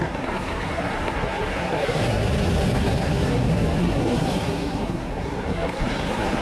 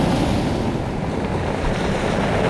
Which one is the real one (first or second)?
second